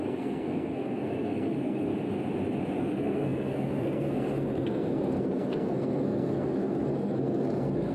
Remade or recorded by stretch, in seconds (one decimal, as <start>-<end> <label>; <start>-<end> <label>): 0.0-1.9 remade; 1.9-2.8 recorded; 2.8-7.9 remade